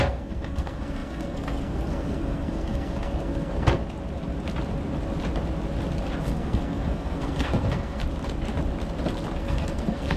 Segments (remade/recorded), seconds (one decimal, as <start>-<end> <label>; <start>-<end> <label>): 0.0-3.8 remade; 3.8-6.2 recorded; 6.2-8.0 remade; 8.0-9.4 recorded; 9.4-10.2 remade